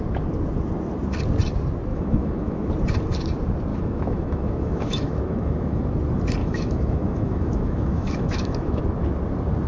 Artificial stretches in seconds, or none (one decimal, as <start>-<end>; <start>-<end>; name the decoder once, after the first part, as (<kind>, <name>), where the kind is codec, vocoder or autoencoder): 1.9-2.7 (autoencoder, DAC-VAE); 3.7-5.8; 6.4-8.8